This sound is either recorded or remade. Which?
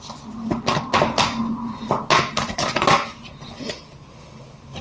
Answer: recorded